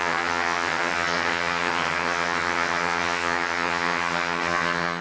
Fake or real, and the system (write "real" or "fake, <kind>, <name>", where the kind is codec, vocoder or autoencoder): fake, vocoder, HiFi-GAN